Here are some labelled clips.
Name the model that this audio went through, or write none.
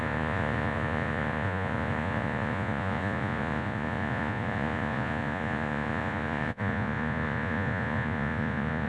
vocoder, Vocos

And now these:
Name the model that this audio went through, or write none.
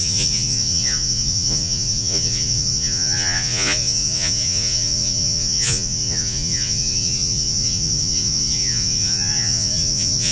vocoder, Vocos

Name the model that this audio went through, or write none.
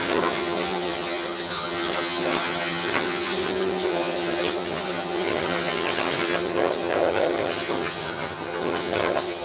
vocoder, HiFi-GAN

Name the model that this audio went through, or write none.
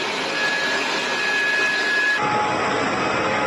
none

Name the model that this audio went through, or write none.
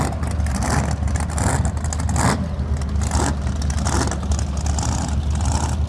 none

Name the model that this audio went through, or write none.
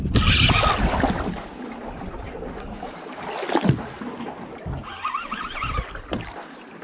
none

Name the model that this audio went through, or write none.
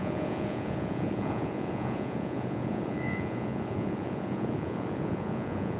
vocoder, Vocos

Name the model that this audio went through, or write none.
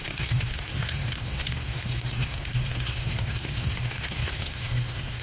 codec, SNAC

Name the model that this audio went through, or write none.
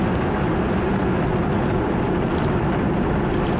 none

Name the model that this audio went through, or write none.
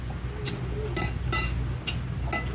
none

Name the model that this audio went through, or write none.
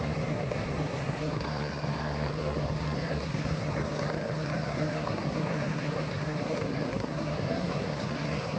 codec, SNAC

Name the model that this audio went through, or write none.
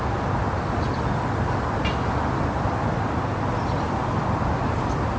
none